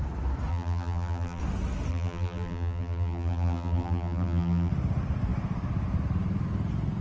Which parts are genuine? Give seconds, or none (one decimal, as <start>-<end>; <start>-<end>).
0.0-0.5; 1.4-1.9; 4.7-7.0